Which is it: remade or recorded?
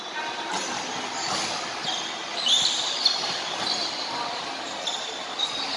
recorded